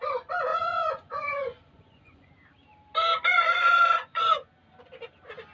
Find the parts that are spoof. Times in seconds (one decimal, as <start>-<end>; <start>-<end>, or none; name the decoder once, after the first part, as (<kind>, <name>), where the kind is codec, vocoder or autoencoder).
0.5-2.3 (vocoder, Vocos); 3.3-4.5